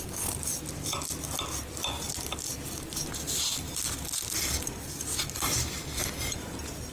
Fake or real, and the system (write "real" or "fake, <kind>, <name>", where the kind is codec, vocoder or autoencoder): real